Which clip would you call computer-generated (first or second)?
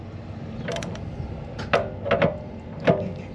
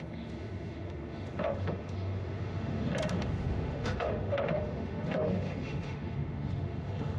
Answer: second